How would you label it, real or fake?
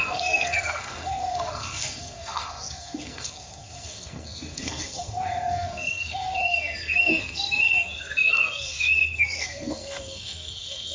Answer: fake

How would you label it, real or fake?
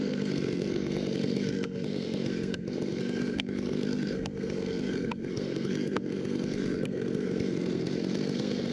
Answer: fake